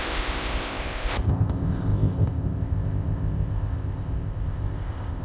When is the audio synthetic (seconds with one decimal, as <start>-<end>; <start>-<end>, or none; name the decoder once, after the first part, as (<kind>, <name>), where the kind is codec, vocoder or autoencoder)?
0.0-5.2 (codec, ZipCodec)